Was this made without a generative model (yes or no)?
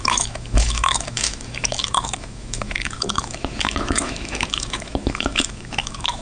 no